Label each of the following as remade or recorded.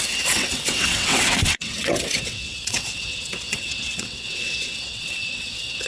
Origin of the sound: remade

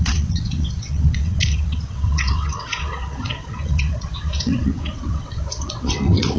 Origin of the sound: remade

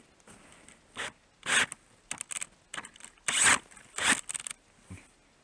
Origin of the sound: recorded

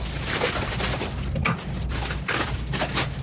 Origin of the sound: recorded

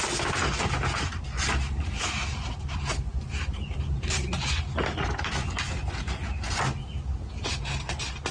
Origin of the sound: recorded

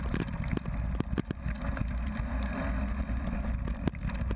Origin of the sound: recorded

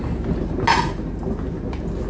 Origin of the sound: recorded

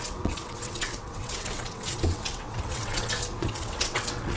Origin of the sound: remade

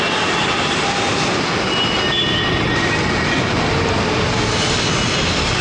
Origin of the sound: recorded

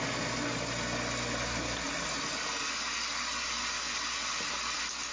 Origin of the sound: recorded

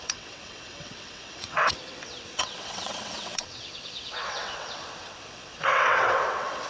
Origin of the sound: remade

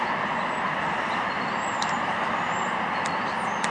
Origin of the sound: recorded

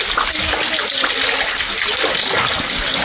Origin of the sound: recorded